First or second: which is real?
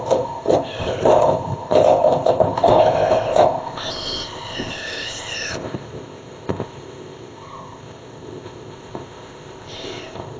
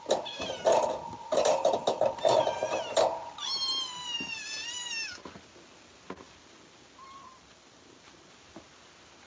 second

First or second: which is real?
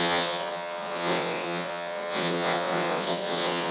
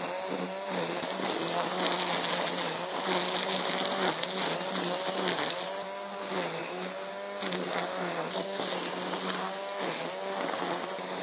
second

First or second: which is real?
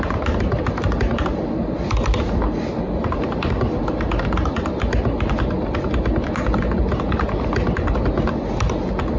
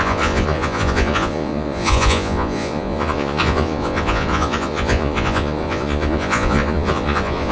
first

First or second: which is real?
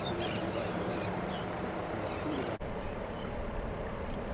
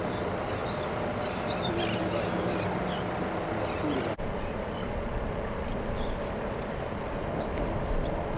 second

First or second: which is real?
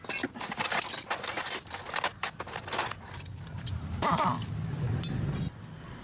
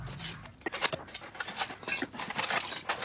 first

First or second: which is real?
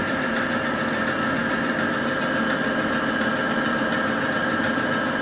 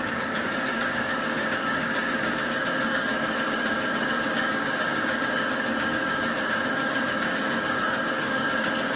first